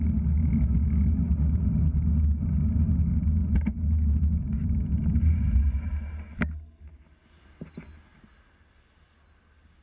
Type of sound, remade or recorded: recorded